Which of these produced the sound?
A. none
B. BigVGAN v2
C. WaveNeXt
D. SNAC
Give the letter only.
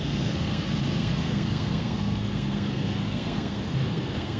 D